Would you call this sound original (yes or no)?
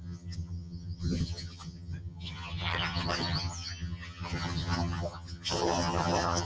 no